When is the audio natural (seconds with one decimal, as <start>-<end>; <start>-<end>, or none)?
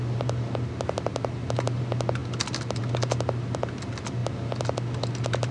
0.0-5.5